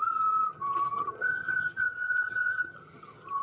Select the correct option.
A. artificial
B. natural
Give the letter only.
A